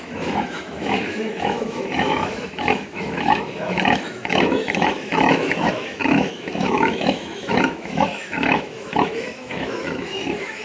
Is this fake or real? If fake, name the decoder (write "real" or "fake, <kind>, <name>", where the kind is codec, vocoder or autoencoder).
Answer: fake, autoencoder, DAC-VAE